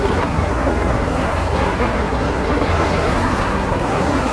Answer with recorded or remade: remade